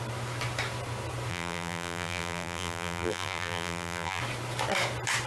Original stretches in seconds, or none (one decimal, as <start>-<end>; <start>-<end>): 0.0-1.3; 4.2-5.3